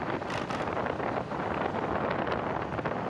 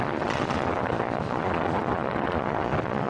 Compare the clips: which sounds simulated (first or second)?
second